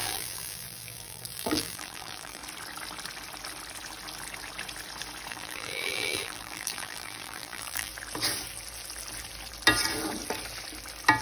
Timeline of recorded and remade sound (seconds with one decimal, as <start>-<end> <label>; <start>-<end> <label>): 0.0-2.4 remade; 2.4-5.3 recorded; 5.3-7.9 remade; 7.9-11.2 recorded